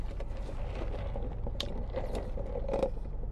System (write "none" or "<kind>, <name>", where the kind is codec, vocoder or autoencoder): none